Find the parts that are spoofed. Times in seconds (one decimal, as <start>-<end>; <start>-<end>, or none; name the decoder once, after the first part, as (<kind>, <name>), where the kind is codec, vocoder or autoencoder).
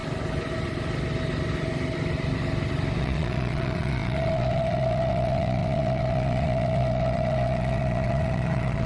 3.0-8.9 (vocoder, Vocos)